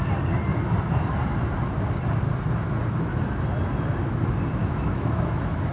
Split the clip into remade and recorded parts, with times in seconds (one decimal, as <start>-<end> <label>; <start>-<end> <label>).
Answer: 0.0-4.6 recorded; 4.6-5.7 remade